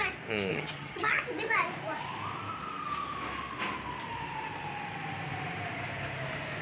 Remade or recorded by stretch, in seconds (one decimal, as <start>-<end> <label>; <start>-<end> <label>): 0.0-0.5 recorded; 0.5-1.2 remade; 1.2-6.6 recorded